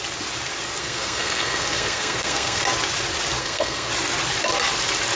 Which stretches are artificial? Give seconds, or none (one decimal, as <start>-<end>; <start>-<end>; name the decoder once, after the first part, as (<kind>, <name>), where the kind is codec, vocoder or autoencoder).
0.8-2.6 (codec, SNAC); 3.4-3.9